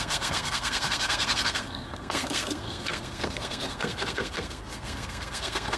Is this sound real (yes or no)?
no